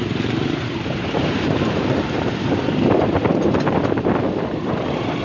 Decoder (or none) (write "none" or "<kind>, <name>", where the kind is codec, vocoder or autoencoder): vocoder, BigVGAN v2